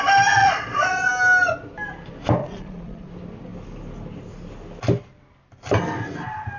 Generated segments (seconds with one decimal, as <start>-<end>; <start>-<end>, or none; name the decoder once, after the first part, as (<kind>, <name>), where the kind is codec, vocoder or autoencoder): 0.4-1.1 (vocoder, Vocos); 2.4-3.1